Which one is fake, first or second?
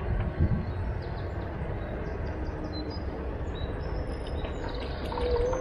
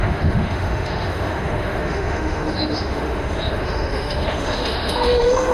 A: second